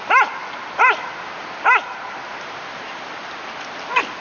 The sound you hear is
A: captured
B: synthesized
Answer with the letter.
A